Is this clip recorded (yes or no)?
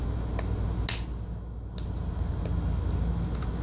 yes